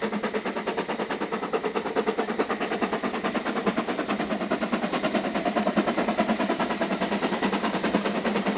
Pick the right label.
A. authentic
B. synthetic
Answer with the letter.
A